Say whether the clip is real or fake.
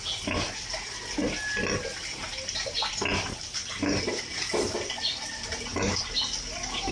real